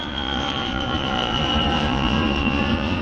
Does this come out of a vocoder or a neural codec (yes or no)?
yes